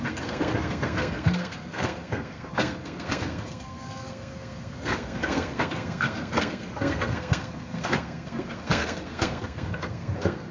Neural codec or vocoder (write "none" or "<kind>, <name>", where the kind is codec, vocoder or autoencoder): codec, SNAC